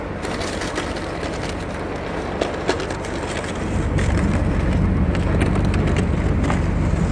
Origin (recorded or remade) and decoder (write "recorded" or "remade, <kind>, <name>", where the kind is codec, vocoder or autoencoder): recorded